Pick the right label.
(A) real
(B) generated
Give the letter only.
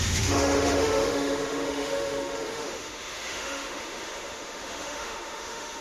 B